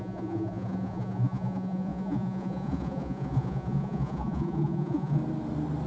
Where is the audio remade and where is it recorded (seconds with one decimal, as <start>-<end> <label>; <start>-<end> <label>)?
0.0-5.2 remade; 5.2-5.9 recorded